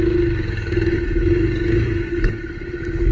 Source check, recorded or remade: remade